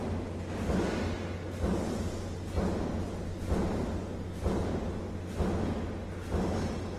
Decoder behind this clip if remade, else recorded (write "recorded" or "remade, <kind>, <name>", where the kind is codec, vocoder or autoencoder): recorded